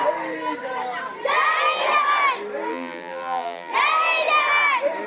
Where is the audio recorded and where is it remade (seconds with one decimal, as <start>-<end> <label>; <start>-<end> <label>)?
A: 0.0-2.7 recorded; 2.7-3.7 remade; 3.7-5.1 recorded